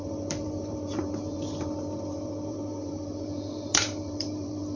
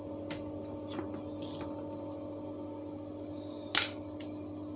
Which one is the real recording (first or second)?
second